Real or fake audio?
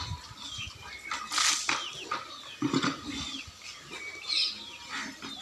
real